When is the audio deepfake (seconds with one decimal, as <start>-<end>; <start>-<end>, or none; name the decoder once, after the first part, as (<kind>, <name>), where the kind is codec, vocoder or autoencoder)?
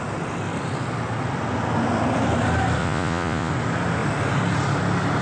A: 2.8-3.5 (vocoder, Vocos)